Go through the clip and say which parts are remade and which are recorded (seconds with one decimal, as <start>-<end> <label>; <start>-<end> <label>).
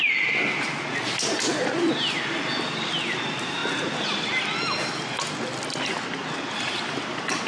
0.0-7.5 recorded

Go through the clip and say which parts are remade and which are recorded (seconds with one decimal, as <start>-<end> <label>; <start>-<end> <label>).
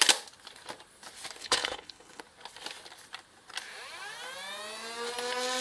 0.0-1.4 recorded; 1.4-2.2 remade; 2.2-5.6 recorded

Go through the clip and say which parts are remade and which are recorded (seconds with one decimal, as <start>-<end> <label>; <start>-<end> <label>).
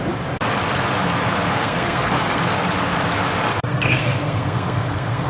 0.0-1.5 recorded; 1.5-2.4 remade; 2.4-3.5 recorded; 3.5-5.3 remade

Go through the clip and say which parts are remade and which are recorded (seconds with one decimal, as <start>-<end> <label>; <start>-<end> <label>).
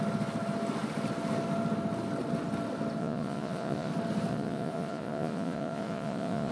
0.0-3.0 recorded; 3.0-3.9 remade; 3.9-4.3 recorded; 4.3-6.5 remade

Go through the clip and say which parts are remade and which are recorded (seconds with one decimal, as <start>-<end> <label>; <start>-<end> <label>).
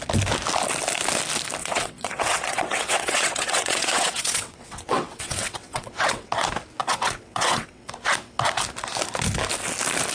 0.0-1.6 recorded; 1.6-6.3 remade; 6.3-6.8 recorded; 6.8-7.9 remade; 7.9-10.1 recorded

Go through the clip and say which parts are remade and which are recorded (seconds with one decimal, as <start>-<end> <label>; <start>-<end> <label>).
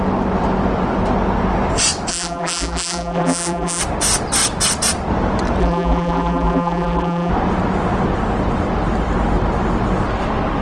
0.0-2.1 recorded; 2.1-3.8 remade; 3.8-5.6 recorded; 5.6-7.3 remade; 7.3-10.6 recorded